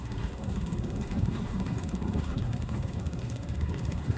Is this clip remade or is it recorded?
remade